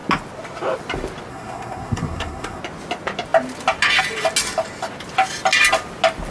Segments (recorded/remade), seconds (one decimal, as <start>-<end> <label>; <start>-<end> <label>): 0.0-1.3 recorded; 1.3-2.6 remade; 2.6-6.3 recorded